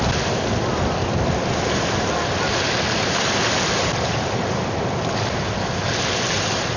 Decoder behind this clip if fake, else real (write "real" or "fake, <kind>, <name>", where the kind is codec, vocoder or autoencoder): real